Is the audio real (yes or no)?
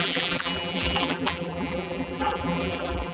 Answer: no